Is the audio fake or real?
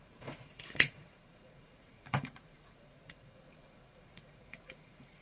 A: fake